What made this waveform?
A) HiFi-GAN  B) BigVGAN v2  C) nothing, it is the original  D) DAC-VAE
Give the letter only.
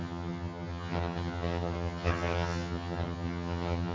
A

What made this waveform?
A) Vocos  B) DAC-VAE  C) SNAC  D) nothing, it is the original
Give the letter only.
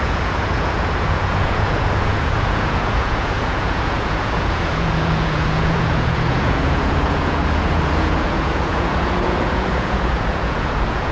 A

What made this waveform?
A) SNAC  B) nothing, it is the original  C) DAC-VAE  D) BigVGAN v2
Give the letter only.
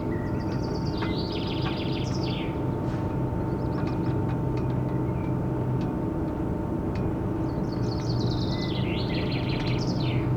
B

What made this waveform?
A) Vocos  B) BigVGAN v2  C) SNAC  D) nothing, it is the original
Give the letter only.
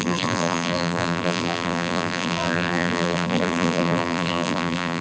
B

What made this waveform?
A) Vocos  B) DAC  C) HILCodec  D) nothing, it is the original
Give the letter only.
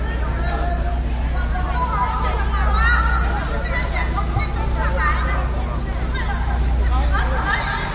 D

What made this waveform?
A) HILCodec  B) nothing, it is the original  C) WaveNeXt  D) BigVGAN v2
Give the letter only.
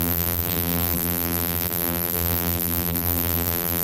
D